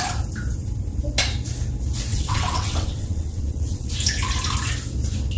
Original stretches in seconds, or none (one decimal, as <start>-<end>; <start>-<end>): 0.0-2.1; 3.9-5.4

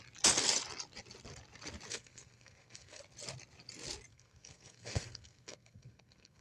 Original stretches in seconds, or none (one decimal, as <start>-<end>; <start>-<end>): 0.0-1.9; 3.0-4.1

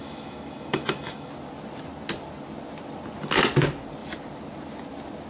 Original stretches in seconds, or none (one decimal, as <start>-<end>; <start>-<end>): 1.3-5.3